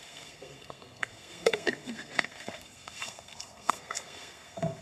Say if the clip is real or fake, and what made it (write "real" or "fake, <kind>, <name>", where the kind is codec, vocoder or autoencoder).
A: fake, codec, SNAC